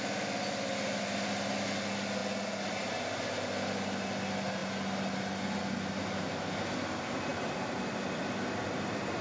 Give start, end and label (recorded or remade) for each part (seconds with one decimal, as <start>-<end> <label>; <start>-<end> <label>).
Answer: 0.0-9.2 recorded